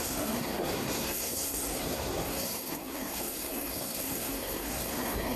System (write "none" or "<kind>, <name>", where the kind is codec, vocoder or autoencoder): codec, SNAC